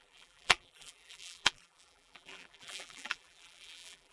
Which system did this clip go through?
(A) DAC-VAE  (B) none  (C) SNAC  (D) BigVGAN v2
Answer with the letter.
D